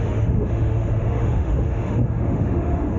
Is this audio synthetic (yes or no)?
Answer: yes